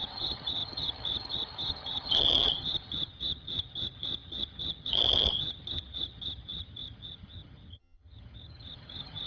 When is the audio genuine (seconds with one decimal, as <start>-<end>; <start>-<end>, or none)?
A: none